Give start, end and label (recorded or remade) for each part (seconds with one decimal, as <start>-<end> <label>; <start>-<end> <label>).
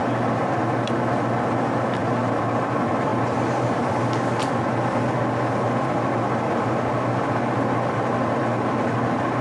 0.0-0.6 remade; 0.6-2.0 recorded; 2.0-2.6 remade; 2.6-3.1 recorded; 3.1-3.9 remade; 3.9-9.4 recorded